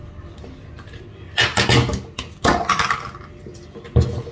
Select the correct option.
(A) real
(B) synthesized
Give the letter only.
A